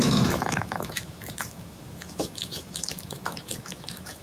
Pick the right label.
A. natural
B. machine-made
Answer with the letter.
B